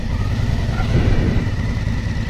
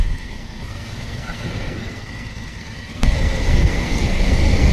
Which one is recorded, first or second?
first